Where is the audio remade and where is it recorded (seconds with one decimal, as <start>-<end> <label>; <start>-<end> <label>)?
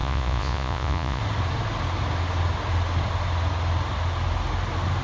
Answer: 0.0-1.2 remade; 1.2-5.0 recorded